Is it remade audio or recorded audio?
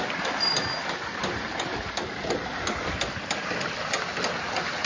recorded